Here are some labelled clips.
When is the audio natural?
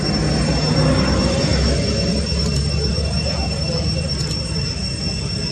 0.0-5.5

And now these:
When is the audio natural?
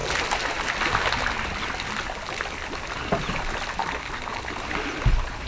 0.0-5.5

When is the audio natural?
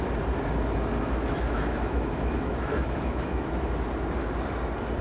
0.0-1.2; 3.7-5.0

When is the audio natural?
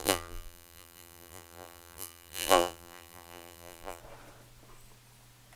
4.0-5.6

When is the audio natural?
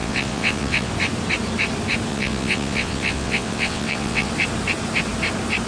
0.9-2.1; 4.3-5.7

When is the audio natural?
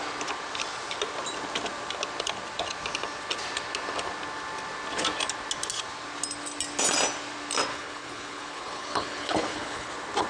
0.0-7.7; 9.9-10.3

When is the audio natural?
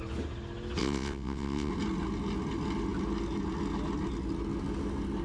0.0-0.8; 1.7-5.2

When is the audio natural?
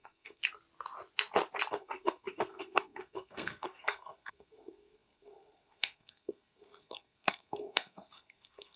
0.4-1.7